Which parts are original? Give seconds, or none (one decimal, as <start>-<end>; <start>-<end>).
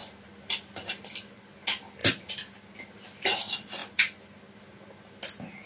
0.0-2.0; 2.5-5.7